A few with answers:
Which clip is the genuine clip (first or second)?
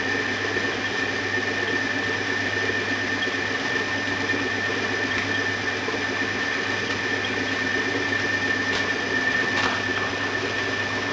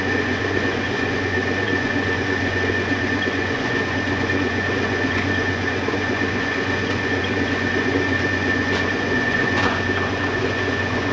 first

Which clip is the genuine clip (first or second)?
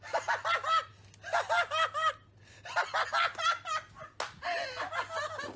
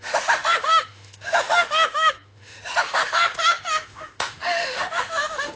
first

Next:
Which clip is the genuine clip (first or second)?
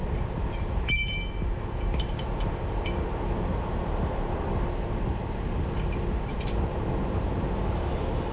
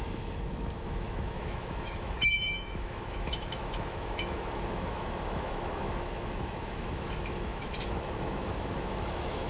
first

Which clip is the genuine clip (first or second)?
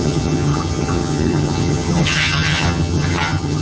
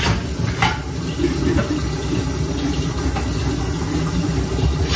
second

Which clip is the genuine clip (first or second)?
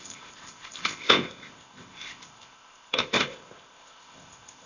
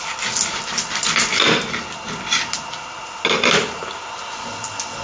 second